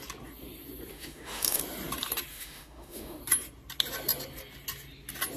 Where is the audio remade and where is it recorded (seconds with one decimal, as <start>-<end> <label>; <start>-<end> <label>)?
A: 0.0-0.9 recorded; 0.9-1.6 remade; 1.6-2.3 recorded; 2.3-3.2 remade; 3.2-5.4 recorded